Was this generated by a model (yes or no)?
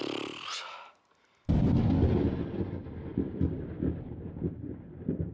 no